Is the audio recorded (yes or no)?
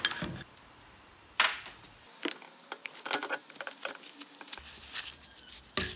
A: yes